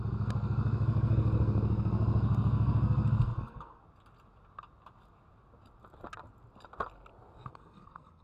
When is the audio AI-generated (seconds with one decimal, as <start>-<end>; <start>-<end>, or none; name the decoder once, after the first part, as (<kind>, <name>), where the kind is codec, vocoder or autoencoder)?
0.0-3.8 (codec, SNAC); 7.5-8.2

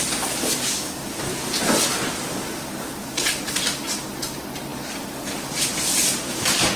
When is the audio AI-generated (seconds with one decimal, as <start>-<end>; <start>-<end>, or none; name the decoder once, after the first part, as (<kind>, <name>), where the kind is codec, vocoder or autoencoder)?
none

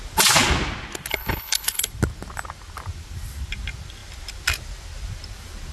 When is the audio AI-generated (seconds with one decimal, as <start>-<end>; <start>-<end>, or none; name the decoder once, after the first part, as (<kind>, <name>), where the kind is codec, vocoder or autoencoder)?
1.1-1.8 (codec, HILCodec)